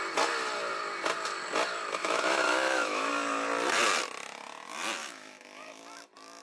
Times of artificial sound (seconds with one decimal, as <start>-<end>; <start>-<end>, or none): 2.0-3.1; 5.0-5.8